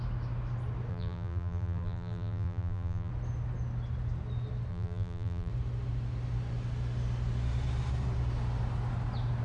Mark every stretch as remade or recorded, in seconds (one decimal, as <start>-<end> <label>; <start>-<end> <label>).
0.0-0.9 recorded; 0.9-3.1 remade; 3.1-4.7 recorded; 4.7-5.5 remade; 5.5-9.4 recorded